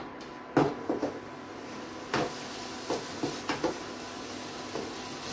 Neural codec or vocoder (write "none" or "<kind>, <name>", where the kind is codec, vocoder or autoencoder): none